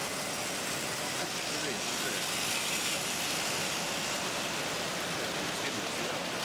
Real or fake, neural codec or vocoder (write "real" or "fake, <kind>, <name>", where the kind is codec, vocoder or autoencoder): real